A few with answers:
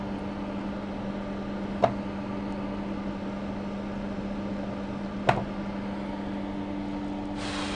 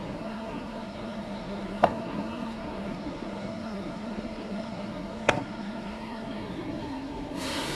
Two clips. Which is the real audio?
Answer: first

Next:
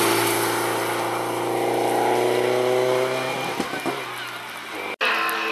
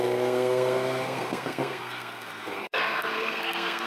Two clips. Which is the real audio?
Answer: first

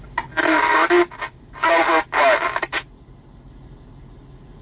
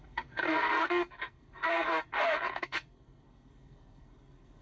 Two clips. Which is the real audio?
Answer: first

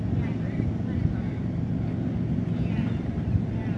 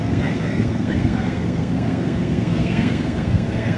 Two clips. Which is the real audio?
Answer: first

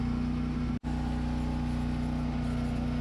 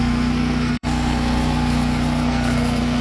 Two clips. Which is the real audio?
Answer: first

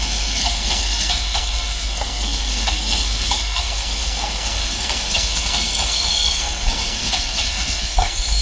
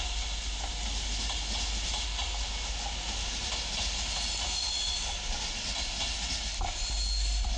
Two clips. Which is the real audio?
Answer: second